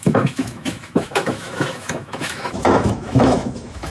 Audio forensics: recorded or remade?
remade